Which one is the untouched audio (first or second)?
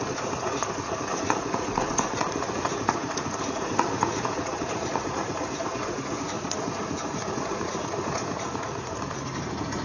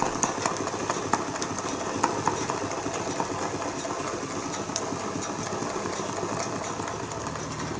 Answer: second